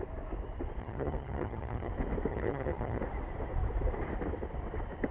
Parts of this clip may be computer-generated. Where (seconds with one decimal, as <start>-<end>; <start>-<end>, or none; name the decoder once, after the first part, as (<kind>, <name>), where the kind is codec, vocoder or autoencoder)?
0.8-1.9 (vocoder, HiFi-GAN); 2.3-3.0